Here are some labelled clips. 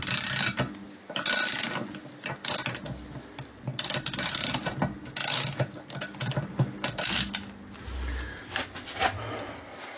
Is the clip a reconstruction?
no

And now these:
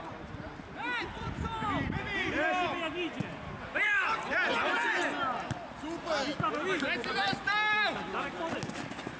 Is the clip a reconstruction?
no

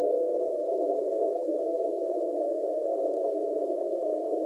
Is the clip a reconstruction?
yes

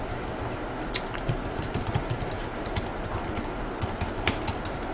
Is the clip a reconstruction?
no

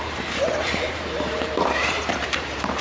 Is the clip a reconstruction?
yes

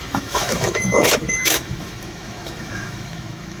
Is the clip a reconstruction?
yes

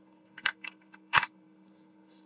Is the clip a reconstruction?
yes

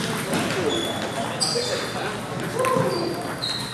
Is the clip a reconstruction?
no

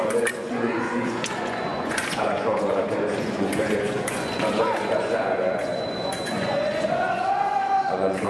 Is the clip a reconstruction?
yes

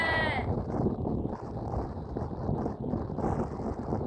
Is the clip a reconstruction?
no